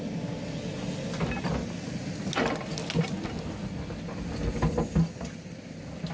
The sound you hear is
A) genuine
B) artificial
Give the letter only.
A